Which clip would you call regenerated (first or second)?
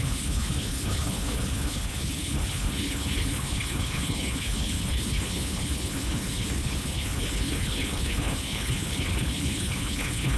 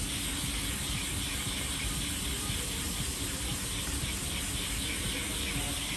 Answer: first